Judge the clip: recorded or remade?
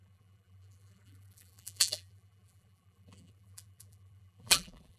remade